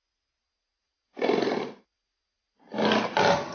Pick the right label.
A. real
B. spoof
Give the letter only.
A